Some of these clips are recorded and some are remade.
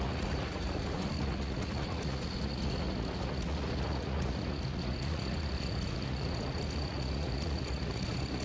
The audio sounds remade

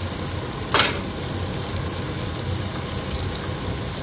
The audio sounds recorded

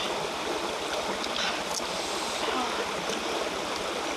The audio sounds recorded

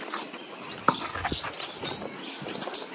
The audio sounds recorded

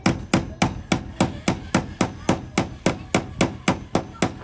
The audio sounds recorded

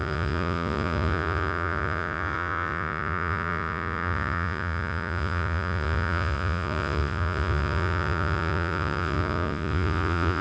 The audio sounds remade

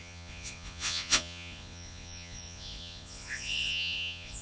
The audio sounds remade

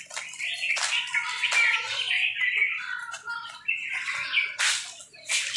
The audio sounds recorded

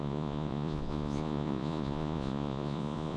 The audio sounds remade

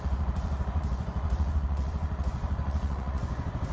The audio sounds remade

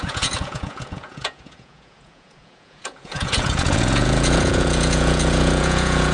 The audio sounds remade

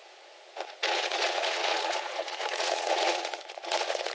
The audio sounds remade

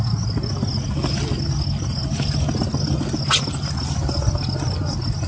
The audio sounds recorded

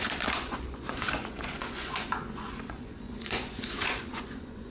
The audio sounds remade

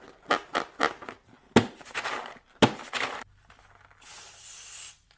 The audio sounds recorded